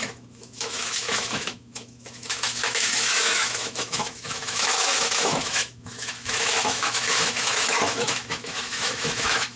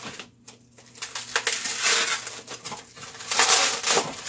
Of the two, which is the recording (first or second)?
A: second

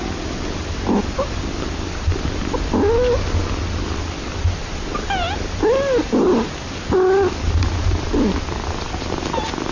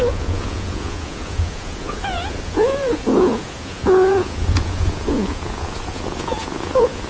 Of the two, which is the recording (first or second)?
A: first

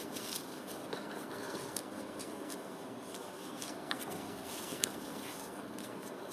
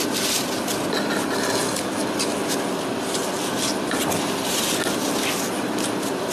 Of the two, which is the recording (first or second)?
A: second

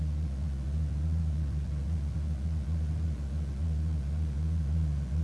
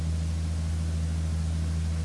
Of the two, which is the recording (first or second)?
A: second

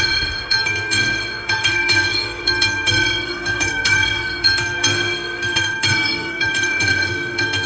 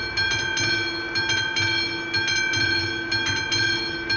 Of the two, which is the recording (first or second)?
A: second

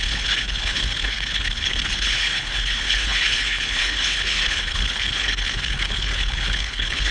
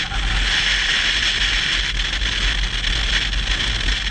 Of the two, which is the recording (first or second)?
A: second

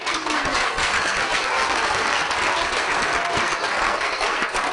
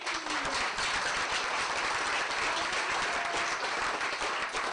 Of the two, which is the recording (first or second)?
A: second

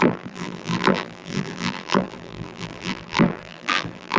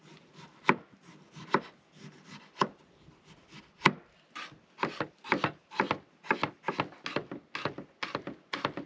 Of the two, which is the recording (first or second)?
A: second